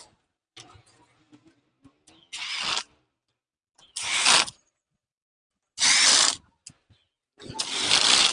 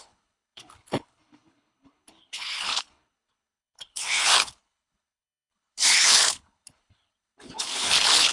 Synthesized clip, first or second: second